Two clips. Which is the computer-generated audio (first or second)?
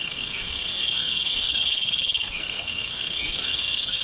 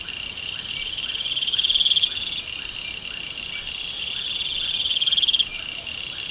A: first